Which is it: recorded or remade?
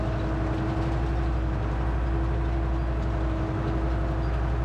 recorded